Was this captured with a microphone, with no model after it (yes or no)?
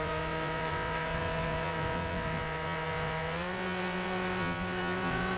no